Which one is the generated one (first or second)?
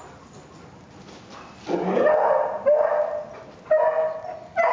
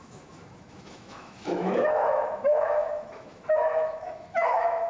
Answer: second